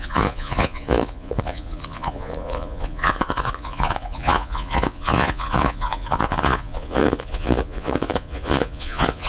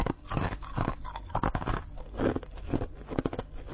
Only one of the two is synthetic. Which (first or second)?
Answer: first